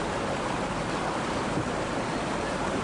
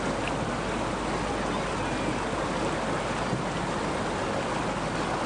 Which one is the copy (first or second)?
first